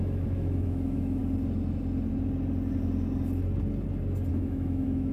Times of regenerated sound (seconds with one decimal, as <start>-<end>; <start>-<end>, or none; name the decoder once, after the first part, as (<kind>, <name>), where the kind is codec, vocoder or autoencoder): 0.0-1.2 (autoencoder, DAC-VAE); 4.3-5.1